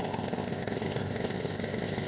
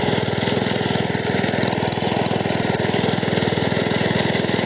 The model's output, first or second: first